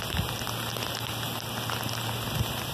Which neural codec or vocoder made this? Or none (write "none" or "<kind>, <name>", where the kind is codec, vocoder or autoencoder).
none